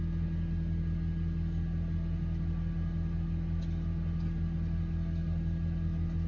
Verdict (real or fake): real